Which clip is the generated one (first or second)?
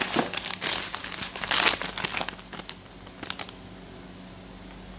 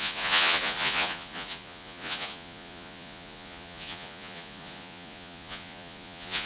second